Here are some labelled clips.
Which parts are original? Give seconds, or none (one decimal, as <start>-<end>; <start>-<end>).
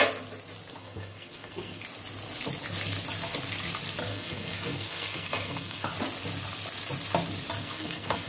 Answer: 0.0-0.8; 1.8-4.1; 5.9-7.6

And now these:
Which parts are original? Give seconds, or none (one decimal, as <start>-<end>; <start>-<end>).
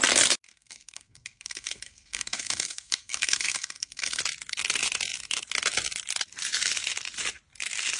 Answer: 0.0-0.5; 4.2-8.0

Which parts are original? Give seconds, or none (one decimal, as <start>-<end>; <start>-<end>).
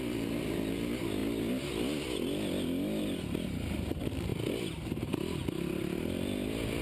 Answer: 0.0-6.8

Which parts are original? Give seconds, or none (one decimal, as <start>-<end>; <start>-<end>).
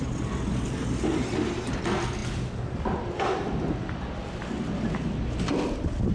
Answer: 0.0-6.1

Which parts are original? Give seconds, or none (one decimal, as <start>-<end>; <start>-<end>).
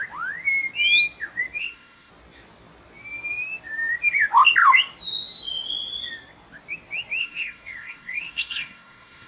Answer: 0.0-1.6; 2.1-7.2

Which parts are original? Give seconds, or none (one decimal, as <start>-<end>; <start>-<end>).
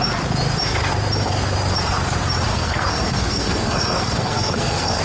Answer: 0.0-2.5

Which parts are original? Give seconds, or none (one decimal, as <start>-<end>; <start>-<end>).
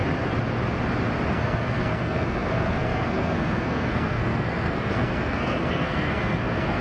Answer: 0.0-1.3